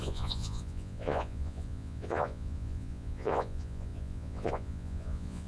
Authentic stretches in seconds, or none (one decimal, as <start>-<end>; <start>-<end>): none